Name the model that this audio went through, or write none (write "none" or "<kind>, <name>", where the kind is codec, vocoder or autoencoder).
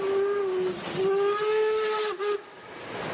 none